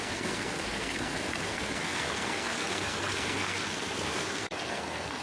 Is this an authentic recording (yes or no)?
no